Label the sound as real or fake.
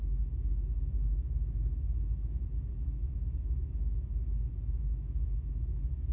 fake